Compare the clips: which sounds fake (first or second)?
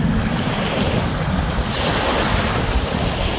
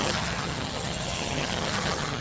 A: second